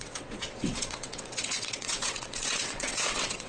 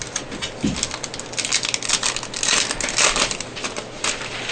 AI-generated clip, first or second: first